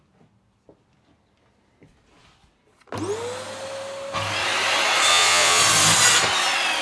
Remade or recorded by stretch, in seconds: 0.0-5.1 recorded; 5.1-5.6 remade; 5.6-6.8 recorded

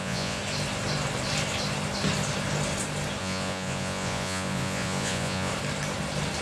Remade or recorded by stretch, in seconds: 0.0-0.4 remade; 0.4-3.2 recorded; 3.2-5.5 remade; 5.5-6.4 recorded